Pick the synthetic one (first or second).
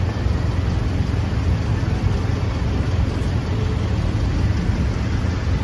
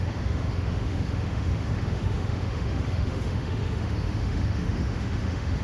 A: second